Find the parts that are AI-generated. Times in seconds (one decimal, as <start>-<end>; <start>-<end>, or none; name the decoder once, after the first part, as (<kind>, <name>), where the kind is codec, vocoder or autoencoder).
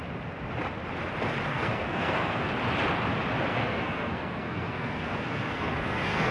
1.5-2.5 (codec, SNAC); 3.5-6.3